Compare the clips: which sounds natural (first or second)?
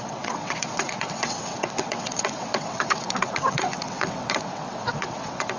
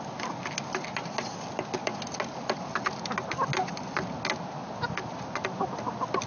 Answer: second